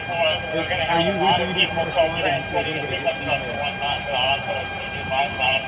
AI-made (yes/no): no